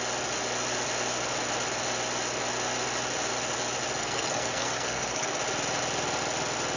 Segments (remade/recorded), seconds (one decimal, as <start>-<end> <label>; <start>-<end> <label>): 0.0-4.0 recorded; 4.0-5.4 remade; 5.4-6.8 recorded

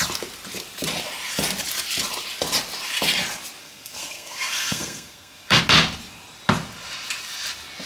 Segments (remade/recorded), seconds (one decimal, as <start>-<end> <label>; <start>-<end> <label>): 0.0-3.6 recorded; 3.6-5.6 remade; 5.6-7.9 recorded

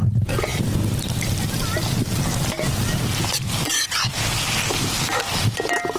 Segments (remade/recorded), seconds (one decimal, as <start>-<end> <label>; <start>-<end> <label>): 0.0-6.0 recorded

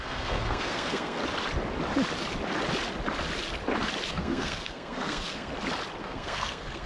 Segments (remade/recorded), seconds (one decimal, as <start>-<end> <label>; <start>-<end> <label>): 0.0-1.2 remade; 1.2-4.1 recorded; 4.1-5.5 remade; 5.5-6.0 recorded; 6.0-6.9 remade

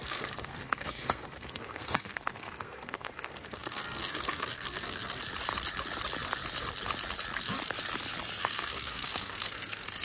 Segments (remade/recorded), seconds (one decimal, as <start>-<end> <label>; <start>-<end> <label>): 0.0-5.2 remade; 5.2-8.4 recorded; 8.4-10.0 remade

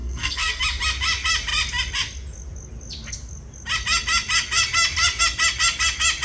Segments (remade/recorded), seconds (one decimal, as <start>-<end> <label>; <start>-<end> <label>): 0.0-0.6 remade; 0.6-6.2 recorded